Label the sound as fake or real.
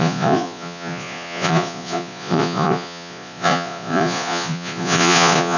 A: fake